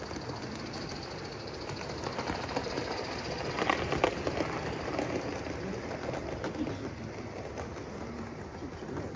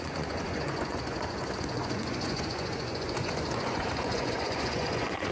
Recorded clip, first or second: first